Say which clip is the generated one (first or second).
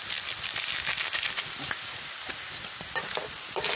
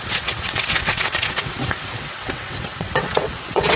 second